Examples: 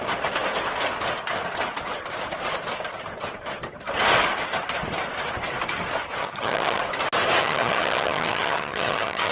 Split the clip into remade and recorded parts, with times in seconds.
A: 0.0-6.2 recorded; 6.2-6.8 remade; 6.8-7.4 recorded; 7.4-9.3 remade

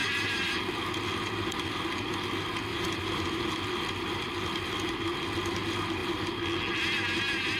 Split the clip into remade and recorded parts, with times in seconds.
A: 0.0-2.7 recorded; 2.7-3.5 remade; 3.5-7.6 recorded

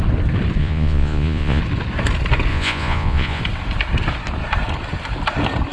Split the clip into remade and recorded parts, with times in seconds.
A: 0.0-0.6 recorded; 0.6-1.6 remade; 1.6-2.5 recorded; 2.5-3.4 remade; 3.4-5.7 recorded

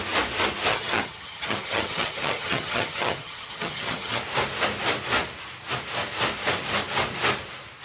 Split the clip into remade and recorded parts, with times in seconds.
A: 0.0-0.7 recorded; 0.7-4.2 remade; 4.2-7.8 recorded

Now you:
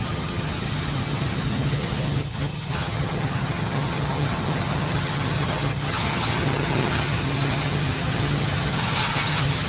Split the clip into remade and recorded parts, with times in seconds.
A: 0.0-9.7 remade

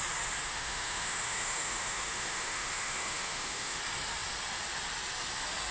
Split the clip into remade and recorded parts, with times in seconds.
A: 0.0-0.4 recorded; 0.4-3.8 remade; 3.8-5.7 recorded